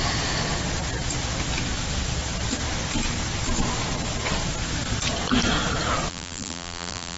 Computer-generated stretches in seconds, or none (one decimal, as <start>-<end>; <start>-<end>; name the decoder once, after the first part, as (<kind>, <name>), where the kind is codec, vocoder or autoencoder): 6.1-7.2 (vocoder, BigVGAN v2)